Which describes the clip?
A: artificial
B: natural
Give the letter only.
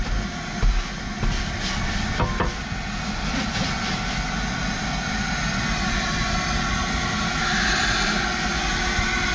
B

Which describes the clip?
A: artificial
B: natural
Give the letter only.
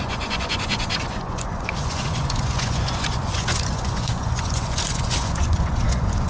A